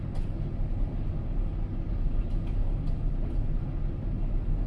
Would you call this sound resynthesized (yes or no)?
no